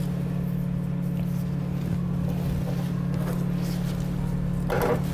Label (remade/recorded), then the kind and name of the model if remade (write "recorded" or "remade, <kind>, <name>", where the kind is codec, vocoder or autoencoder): recorded